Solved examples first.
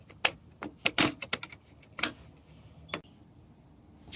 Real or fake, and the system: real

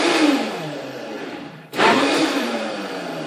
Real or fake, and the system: fake, vocoder, BigVGAN v2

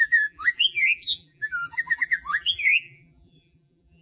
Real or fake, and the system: fake, vocoder, BigVGAN v2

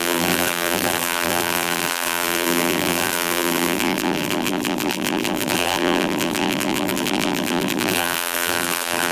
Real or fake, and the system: fake, vocoder, BigVGAN v2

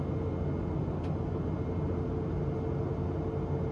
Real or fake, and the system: real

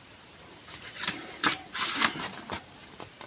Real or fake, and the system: fake, vocoder, BigVGAN v2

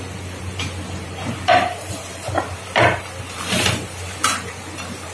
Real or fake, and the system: fake, vocoder, BigVGAN v2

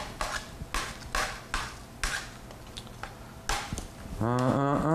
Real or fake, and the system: real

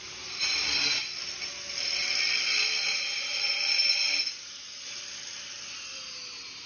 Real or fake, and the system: fake, vocoder, BigVGAN v2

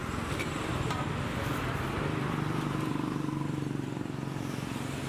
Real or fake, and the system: real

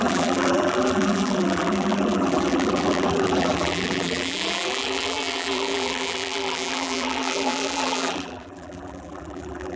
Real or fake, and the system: fake, vocoder, BigVGAN v2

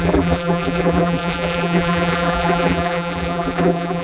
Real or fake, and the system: fake, vocoder, BigVGAN v2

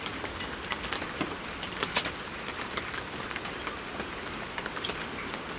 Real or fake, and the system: fake, vocoder, BigVGAN v2